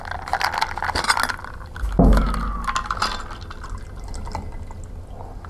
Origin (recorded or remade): recorded